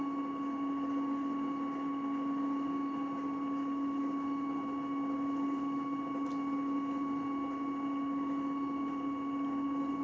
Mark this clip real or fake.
real